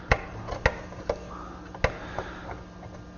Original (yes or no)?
yes